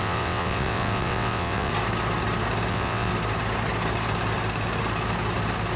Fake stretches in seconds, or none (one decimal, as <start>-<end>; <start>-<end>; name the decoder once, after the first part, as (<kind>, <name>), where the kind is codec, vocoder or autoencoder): 0.0-1.7 (vocoder, WaveNeXt); 2.7-3.1